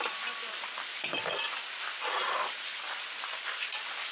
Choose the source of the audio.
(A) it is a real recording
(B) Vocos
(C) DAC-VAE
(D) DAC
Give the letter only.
A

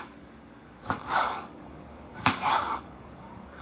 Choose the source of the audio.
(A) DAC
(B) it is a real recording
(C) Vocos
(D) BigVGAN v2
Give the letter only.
A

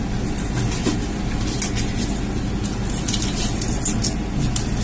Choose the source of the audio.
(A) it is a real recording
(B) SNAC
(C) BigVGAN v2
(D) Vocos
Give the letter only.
A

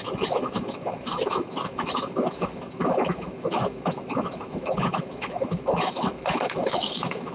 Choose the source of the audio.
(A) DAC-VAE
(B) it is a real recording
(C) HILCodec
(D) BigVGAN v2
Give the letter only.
A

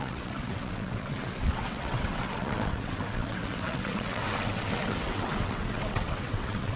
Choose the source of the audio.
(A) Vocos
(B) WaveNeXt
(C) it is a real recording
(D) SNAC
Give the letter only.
B